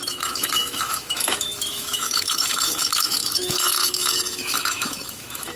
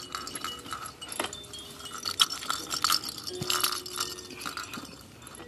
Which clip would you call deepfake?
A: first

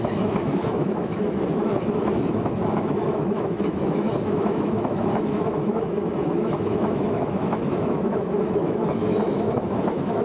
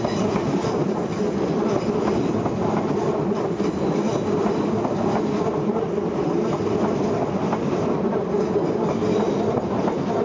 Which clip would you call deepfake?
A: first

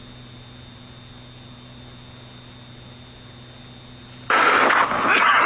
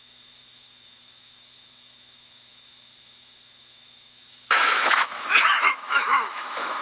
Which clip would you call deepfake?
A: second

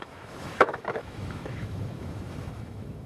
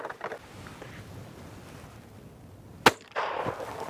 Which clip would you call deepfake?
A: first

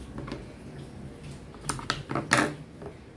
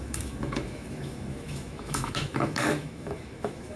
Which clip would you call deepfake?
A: second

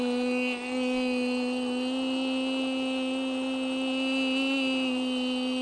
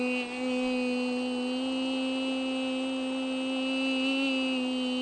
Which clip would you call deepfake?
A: first